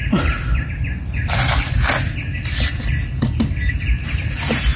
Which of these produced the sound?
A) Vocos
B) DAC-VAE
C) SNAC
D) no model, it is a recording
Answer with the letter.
D